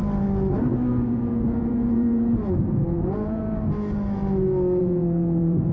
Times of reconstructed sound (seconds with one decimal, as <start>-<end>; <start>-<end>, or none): 0.9-3.4; 4.8-5.7